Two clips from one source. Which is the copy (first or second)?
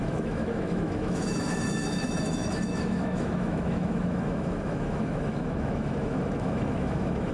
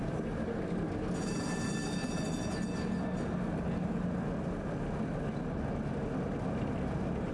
first